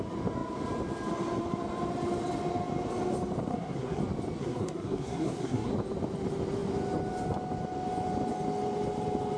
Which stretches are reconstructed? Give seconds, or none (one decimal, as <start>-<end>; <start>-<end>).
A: 3.5-4.0; 4.4-5.7